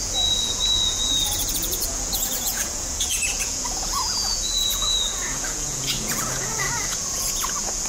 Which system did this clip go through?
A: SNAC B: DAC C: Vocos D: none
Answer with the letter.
C